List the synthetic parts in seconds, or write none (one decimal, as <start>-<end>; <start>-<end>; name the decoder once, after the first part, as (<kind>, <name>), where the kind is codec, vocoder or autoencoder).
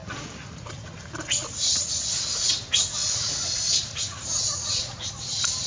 0.0-0.7 (vocoder, Vocos); 3.0-5.1